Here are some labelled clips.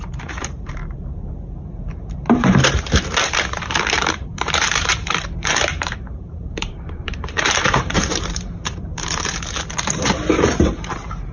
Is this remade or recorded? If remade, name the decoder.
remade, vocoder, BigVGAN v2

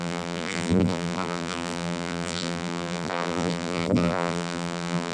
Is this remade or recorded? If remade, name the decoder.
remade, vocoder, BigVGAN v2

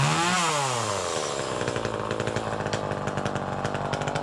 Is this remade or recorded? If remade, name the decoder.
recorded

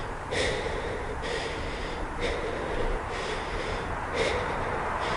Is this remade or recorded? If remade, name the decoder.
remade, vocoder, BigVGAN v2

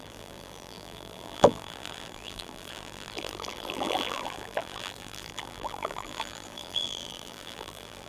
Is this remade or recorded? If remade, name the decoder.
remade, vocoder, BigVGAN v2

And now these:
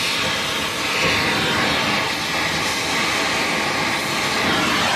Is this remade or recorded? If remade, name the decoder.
recorded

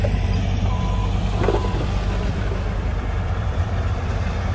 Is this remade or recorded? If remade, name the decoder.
remade, vocoder, BigVGAN v2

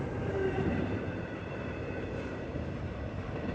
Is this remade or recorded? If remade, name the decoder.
remade, vocoder, BigVGAN v2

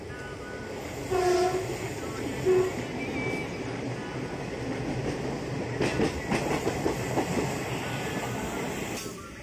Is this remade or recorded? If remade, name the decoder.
recorded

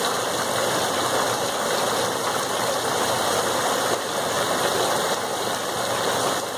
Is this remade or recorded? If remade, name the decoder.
recorded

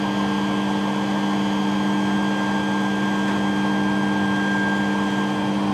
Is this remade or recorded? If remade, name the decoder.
recorded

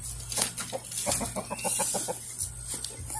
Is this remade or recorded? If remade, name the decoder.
recorded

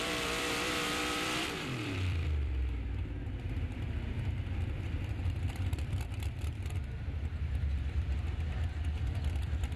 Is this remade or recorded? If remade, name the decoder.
remade, vocoder, BigVGAN v2